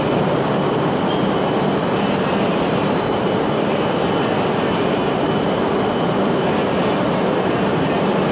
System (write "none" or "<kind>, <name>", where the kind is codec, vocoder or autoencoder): none